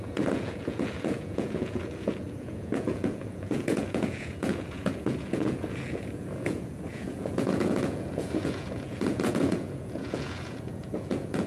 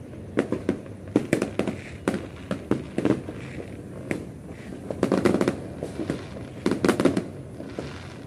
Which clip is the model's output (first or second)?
first